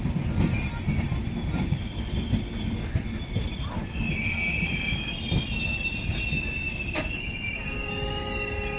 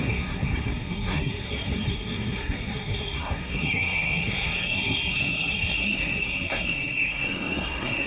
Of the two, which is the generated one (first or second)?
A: second